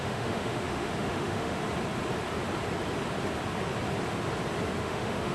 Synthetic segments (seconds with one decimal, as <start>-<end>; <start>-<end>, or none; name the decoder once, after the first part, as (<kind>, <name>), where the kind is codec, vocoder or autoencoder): 0.0-1.6 (autoencoder, DAC-VAE); 4.8-5.3